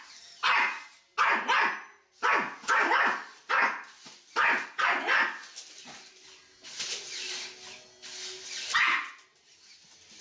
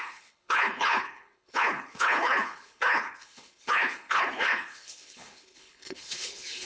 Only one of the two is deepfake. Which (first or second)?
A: second